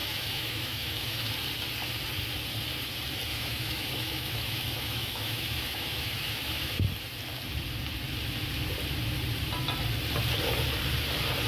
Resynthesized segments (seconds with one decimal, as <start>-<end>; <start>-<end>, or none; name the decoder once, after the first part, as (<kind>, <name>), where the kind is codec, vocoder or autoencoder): 0.0-1.3 (autoencoder, DAC-VAE); 3.3-6.8